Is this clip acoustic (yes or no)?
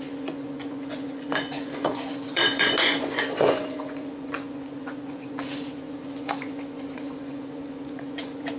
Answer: no